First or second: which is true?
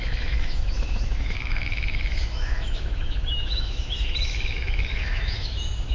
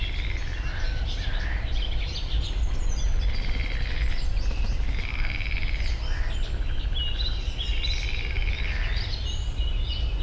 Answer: second